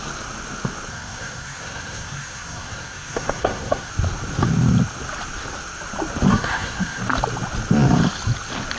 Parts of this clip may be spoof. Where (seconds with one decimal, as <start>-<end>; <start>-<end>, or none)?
0.9-3.9; 6.3-7.0